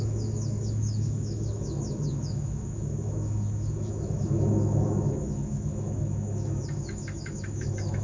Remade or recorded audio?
remade